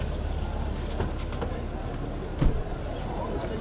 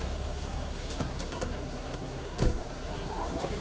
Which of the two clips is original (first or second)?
first